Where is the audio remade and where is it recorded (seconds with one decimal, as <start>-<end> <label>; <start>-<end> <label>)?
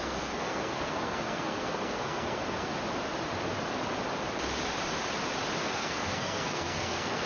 0.0-2.7 remade; 2.7-5.6 recorded; 5.6-7.3 remade